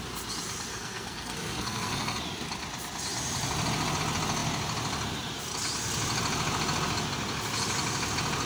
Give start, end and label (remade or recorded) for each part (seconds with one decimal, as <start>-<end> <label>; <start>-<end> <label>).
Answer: 0.0-0.7 recorded; 0.7-2.2 remade; 2.2-8.5 recorded